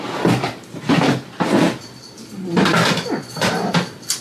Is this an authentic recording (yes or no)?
no